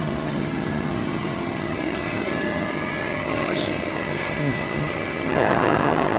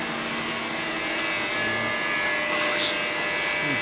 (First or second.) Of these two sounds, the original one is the second